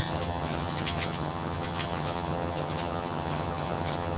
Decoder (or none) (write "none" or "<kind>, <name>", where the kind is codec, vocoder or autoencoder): vocoder, HiFi-GAN